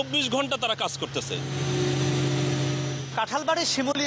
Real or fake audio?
real